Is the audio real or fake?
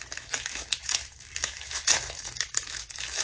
fake